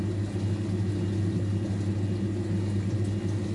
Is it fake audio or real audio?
real